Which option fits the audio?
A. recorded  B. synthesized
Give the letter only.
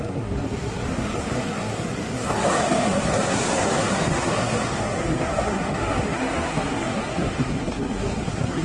B